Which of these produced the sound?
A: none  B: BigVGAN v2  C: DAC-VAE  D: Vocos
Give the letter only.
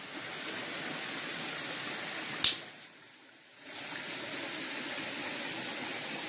A